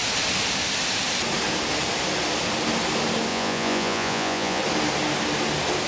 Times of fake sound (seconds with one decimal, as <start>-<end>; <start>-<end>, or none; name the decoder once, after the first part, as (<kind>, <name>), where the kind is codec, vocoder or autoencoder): 3.3-4.6 (vocoder, Vocos)